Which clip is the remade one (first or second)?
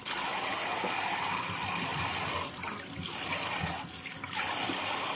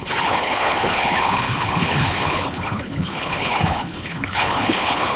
second